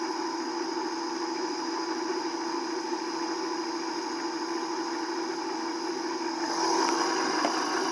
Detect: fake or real fake